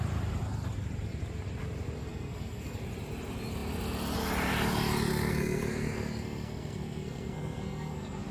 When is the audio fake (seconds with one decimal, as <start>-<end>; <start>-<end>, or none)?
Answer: 2.0-2.8; 5.1-8.3